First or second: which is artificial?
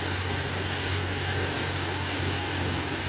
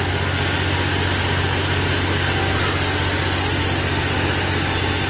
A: first